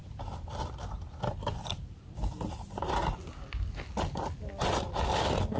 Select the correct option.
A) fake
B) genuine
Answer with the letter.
B